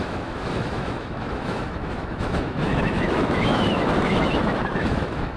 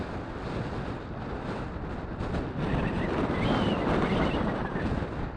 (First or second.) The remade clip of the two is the first